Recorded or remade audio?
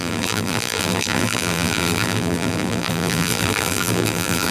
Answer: remade